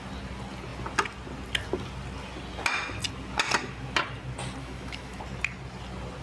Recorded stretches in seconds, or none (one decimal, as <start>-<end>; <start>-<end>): 0.0-4.6; 5.2-6.2